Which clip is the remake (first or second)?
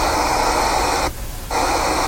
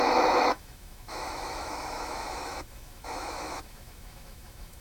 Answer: second